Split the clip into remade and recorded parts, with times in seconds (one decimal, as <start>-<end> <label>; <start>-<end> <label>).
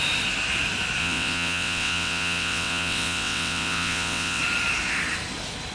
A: 0.0-1.0 recorded; 1.0-4.4 remade; 4.4-5.7 recorded